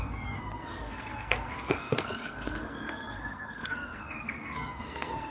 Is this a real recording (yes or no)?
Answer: no